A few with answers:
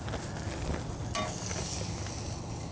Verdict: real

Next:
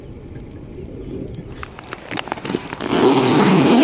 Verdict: real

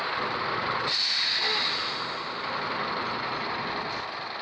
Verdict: real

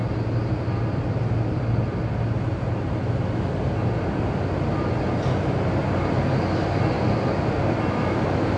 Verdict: real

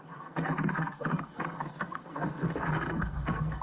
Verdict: fake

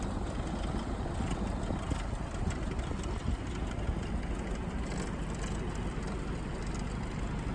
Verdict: real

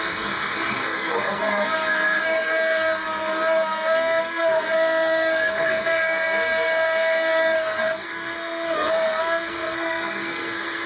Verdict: fake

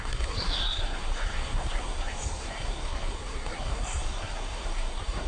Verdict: fake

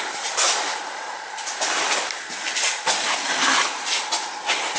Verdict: real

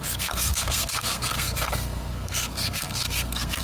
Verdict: fake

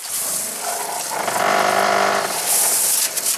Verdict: real